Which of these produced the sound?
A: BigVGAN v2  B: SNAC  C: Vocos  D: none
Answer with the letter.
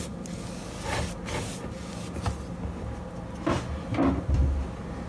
D